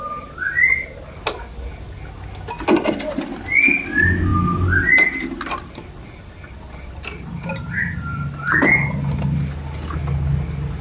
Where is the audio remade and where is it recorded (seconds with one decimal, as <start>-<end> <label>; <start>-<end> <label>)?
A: 0.0-10.8 recorded